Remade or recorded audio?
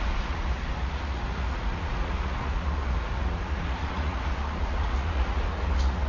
remade